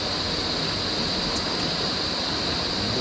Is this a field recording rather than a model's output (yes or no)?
yes